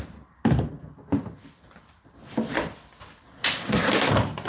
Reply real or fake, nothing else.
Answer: real